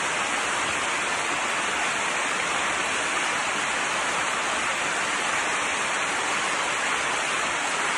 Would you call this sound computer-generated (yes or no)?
no